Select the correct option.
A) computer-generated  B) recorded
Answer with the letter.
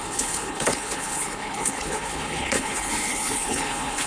A